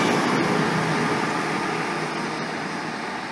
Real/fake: real